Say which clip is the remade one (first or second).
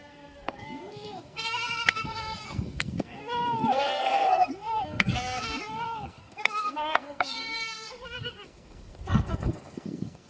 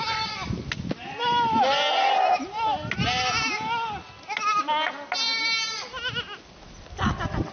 first